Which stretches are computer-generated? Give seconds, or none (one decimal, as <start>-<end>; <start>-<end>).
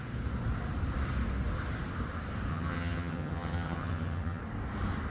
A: 2.5-4.4